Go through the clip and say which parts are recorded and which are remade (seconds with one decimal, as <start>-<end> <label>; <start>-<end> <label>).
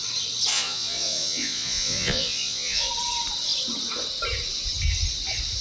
0.0-0.5 recorded; 0.5-2.9 remade; 2.9-5.6 recorded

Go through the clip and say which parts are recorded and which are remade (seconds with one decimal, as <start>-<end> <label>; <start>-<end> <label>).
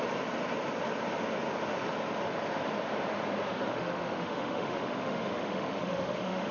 0.0-3.7 recorded; 3.7-6.5 remade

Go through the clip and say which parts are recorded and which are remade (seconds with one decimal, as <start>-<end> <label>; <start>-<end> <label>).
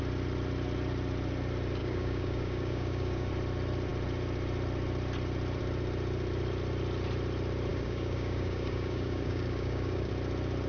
0.0-1.8 recorded; 1.8-3.3 remade; 3.3-7.7 recorded; 7.7-10.1 remade; 10.1-10.7 recorded